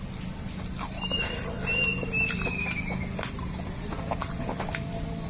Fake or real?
real